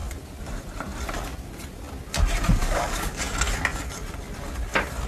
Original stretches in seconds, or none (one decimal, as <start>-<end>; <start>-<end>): 0.0-2.6; 3.2-5.1